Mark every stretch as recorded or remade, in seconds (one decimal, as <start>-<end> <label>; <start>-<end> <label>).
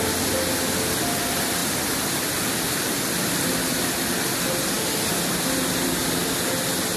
0.0-7.0 recorded